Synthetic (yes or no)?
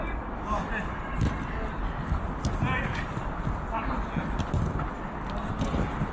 no